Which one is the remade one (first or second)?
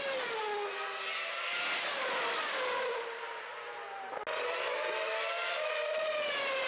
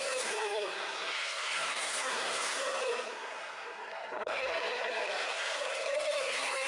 second